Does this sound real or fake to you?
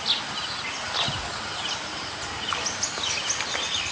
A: real